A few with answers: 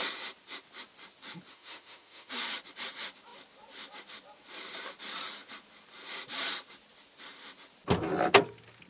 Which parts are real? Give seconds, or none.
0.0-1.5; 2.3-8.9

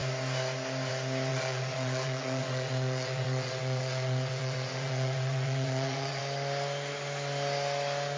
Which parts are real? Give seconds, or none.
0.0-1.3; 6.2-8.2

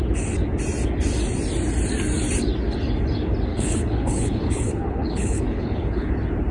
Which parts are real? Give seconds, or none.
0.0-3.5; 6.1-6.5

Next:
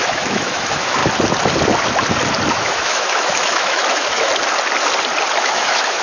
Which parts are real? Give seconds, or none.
1.0-2.5; 4.3-5.4